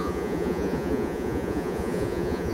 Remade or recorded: remade